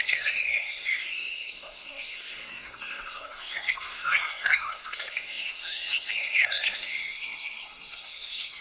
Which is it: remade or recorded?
remade